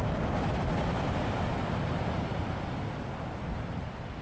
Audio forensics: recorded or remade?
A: recorded